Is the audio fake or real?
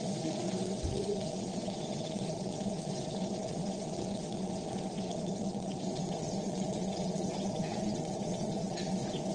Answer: fake